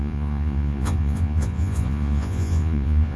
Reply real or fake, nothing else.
fake